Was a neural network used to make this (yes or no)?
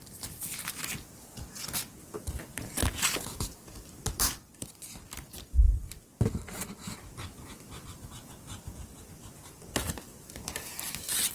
no